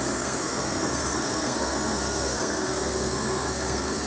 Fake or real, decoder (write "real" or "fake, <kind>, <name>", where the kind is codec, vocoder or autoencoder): fake, codec, SNAC